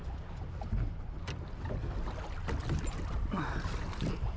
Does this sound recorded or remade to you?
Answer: recorded